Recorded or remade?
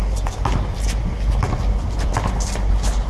recorded